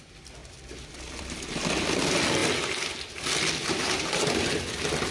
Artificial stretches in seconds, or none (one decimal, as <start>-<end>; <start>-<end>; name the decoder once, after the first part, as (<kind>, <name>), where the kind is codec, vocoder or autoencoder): 3.6-4.2 (vocoder, BigVGAN v2)